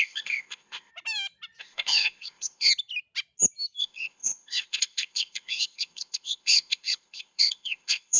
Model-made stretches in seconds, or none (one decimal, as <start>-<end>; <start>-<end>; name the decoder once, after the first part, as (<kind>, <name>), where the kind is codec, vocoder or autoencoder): 0.0-0.9 (codec, ZipCodec); 1.6-2.7; 3.8-8.2